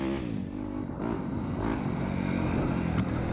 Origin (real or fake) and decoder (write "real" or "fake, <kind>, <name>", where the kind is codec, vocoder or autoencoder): real